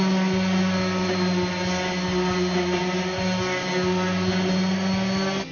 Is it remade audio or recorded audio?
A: recorded